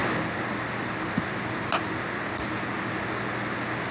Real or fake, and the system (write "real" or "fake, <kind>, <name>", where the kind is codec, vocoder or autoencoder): real